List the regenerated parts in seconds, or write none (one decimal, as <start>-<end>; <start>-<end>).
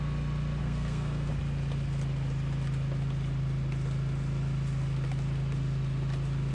0.6-1.3